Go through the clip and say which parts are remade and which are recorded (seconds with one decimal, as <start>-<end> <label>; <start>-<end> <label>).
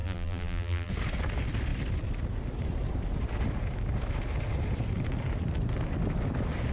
0.0-0.9 remade; 0.9-6.7 recorded